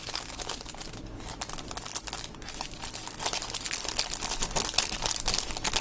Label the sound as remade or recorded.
recorded